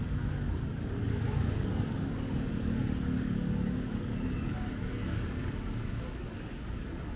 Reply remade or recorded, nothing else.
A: remade